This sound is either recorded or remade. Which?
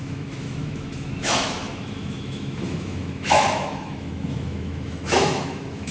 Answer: remade